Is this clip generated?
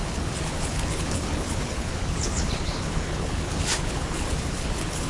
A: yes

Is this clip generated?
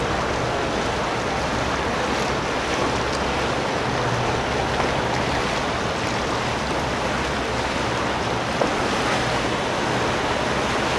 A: no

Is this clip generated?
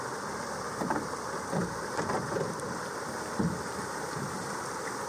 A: yes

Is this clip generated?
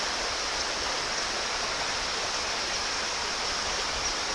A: no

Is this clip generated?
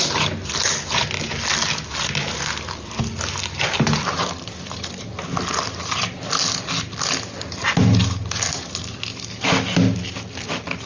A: no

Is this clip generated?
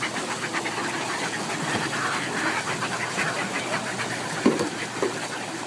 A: yes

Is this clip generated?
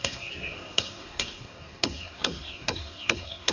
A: yes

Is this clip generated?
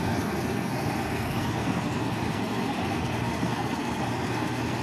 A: yes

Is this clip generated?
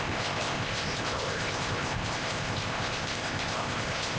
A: yes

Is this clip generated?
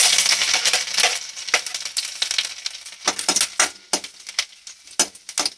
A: no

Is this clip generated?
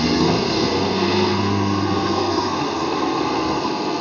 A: yes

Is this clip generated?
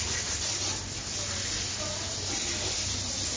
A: no